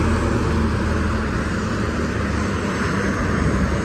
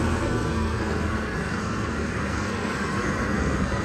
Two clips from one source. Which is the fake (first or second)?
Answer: second